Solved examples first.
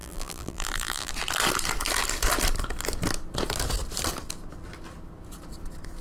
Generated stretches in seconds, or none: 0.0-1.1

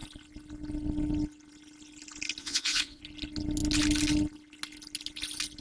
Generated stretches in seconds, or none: 2.4-3.0

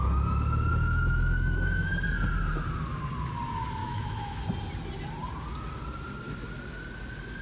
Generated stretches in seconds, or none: 0.7-1.9; 3.8-4.4

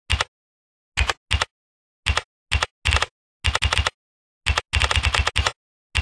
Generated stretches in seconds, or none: none